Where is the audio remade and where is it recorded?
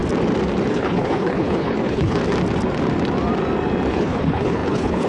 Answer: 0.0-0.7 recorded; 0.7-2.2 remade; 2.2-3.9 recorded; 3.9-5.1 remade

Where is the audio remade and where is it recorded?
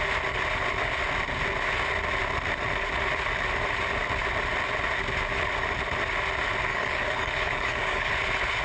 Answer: 0.0-6.7 recorded; 6.7-8.1 remade; 8.1-8.6 recorded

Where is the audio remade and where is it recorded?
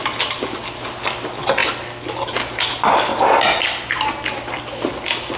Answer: 0.0-5.4 recorded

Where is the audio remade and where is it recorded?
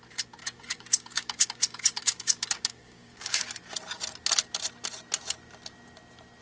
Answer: 0.0-0.4 recorded; 0.4-3.5 remade; 3.5-6.4 recorded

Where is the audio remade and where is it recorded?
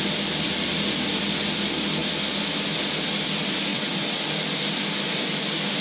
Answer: 0.0-3.7 recorded; 3.7-4.2 remade; 4.2-5.8 recorded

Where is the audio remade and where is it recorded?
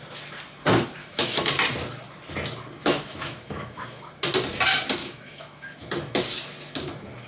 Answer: 0.0-1.0 recorded; 1.0-1.5 remade; 1.5-2.8 recorded; 2.8-4.1 remade; 4.1-5.0 recorded; 5.0-5.9 remade; 5.9-7.3 recorded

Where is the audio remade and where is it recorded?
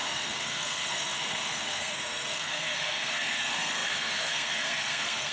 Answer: 0.0-5.3 remade